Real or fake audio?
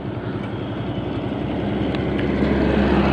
real